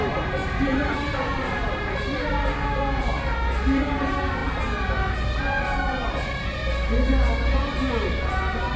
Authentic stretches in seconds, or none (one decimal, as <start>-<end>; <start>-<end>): 0.0-0.4; 2.4-8.8